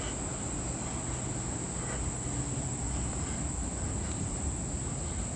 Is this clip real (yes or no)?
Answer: yes